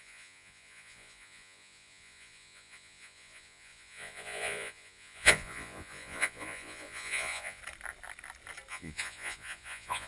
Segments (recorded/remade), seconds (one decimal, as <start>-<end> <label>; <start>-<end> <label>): 0.0-7.6 remade; 7.6-8.7 recorded; 8.7-10.1 remade